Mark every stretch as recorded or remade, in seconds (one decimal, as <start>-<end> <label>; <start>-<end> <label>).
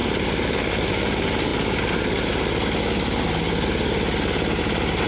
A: 0.0-0.9 remade; 0.9-5.1 recorded